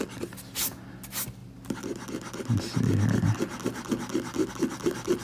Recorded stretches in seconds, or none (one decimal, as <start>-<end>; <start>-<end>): 0.0-5.2